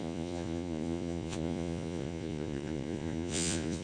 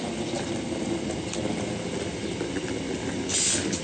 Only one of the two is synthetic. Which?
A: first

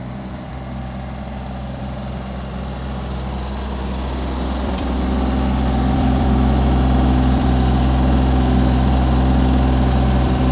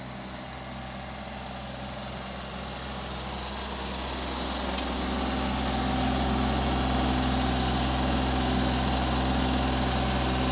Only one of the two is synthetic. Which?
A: first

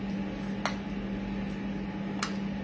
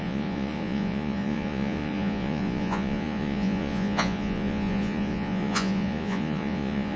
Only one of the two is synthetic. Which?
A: second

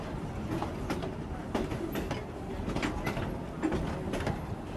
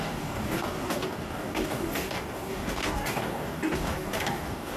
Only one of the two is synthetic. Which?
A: second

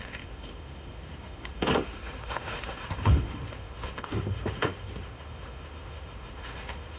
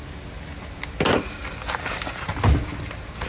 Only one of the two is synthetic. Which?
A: first